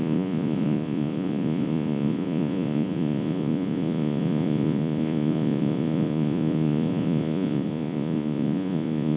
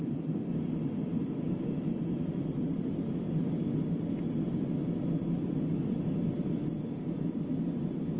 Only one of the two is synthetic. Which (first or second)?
first